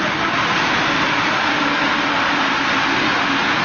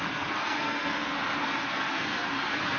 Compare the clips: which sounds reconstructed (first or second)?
second